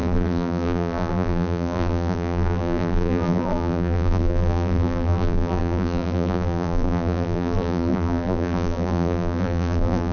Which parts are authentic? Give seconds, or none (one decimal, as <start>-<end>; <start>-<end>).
none